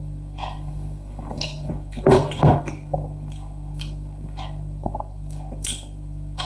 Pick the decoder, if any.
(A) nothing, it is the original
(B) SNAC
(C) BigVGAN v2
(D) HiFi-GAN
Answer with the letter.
B